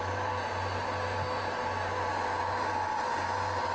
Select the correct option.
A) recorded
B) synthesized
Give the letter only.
A